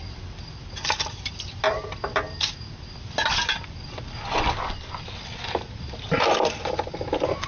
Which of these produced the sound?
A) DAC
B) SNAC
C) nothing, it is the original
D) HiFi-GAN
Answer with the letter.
C